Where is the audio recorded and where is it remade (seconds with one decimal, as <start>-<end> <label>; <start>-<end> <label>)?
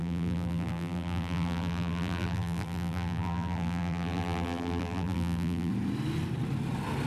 0.0-5.7 remade; 5.7-7.1 recorded